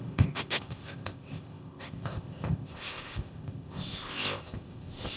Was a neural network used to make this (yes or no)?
yes